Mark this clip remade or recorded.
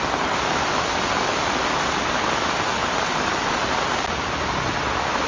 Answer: recorded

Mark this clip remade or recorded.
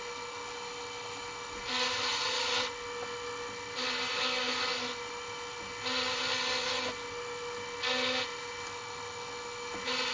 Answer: recorded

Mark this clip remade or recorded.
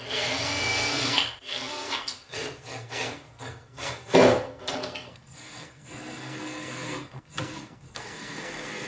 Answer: remade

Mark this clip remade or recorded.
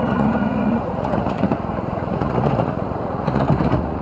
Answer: remade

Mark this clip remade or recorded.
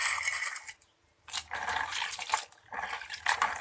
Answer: recorded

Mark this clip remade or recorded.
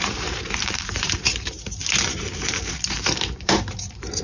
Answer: remade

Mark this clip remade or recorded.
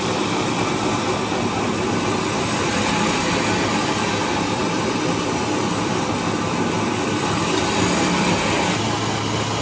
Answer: recorded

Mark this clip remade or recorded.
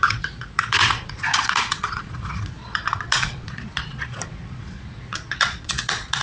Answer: remade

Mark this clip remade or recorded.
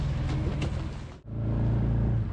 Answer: recorded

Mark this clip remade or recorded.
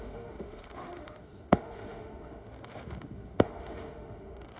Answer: remade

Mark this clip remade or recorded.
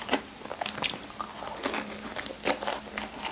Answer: recorded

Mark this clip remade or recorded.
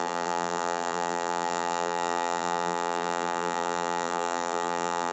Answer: remade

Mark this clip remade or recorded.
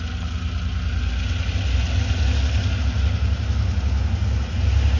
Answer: recorded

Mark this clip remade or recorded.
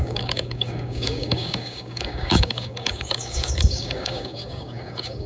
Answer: remade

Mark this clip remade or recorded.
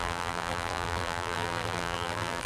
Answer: remade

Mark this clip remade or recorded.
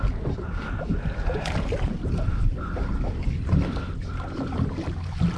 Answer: recorded